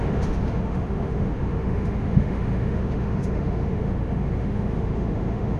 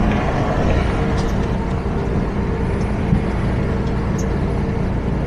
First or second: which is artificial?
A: first